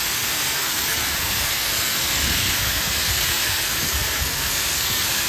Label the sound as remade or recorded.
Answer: remade